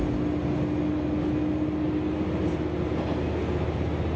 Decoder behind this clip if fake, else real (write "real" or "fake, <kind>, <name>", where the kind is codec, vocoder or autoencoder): real